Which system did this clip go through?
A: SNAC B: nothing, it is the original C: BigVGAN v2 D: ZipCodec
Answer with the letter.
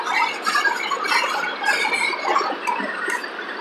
B